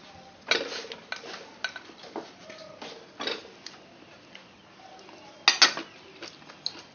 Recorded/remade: recorded